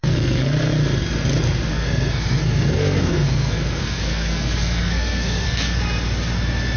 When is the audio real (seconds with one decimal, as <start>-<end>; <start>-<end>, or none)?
0.7-1.7; 5.8-6.8